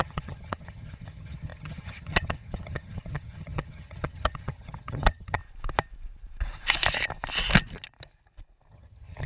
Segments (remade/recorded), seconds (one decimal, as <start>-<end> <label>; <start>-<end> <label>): 0.0-5.4 remade; 5.4-8.7 recorded; 8.7-9.3 remade

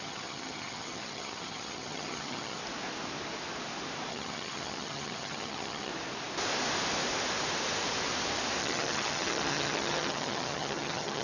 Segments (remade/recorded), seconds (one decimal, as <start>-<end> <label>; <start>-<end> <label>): 0.0-2.6 remade; 2.6-4.1 recorded; 4.1-5.9 remade; 5.9-8.6 recorded; 8.6-11.2 remade